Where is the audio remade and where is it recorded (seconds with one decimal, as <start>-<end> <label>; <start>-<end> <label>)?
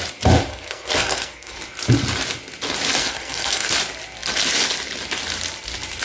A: 0.0-0.5 recorded; 0.5-1.6 remade; 1.6-3.0 recorded; 3.0-3.7 remade; 3.7-6.0 recorded